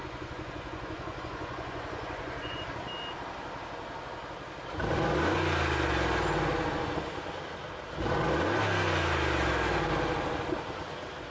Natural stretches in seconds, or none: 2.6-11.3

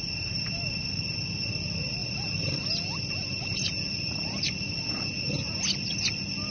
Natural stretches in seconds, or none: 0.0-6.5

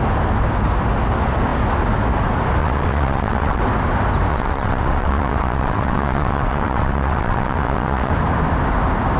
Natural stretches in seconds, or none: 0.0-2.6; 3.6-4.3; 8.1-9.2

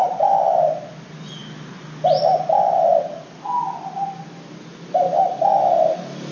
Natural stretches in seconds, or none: 0.0-6.3

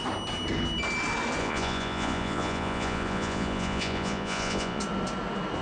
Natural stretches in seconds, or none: 0.0-1.4; 4.8-5.6

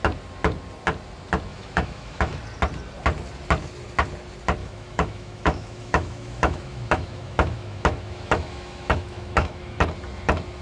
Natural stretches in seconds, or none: 0.0-1.5; 2.4-4.6; 9.8-10.6

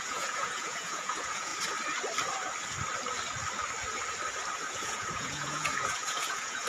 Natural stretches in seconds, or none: 1.5-4.7